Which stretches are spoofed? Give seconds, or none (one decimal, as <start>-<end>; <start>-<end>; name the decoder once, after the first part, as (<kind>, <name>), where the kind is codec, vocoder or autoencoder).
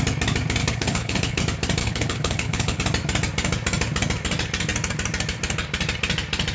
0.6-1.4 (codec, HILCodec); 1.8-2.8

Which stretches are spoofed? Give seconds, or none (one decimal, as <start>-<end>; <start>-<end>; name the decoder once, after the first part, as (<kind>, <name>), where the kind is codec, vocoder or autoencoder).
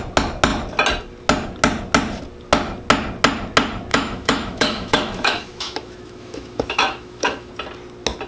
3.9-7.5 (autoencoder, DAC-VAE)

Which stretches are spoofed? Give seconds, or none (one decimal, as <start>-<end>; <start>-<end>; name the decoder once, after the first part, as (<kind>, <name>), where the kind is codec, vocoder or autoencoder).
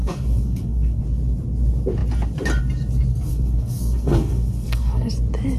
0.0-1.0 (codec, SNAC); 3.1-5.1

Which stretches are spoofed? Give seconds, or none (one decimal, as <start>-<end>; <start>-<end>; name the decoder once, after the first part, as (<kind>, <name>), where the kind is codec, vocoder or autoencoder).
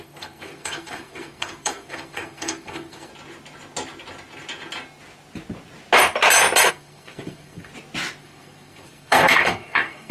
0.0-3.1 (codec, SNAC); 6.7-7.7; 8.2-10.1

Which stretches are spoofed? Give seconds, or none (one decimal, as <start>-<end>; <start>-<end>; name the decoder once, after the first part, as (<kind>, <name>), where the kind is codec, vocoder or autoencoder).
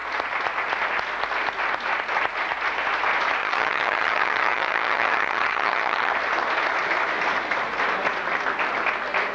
3.4-6.1 (vocoder, HiFi-GAN)